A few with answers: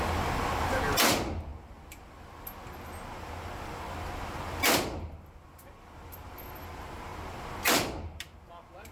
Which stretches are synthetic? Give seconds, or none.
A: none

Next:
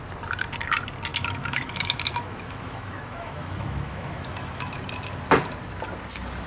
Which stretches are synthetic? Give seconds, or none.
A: 1.1-4.8

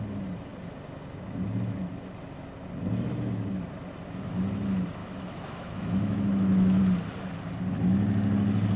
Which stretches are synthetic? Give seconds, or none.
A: 5.0-6.8

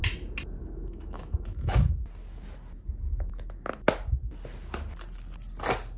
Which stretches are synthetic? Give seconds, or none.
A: 0.6-1.9

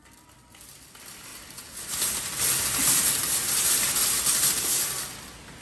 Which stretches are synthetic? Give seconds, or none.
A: none

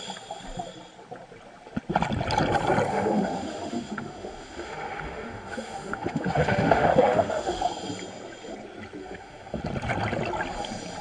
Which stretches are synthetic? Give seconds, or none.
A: 2.9-7.7; 9.0-9.6